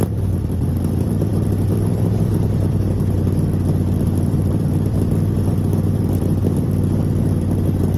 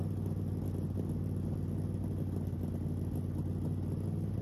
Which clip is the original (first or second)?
second